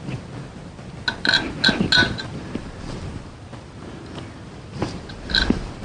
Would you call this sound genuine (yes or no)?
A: yes